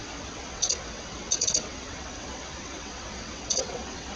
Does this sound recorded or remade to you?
remade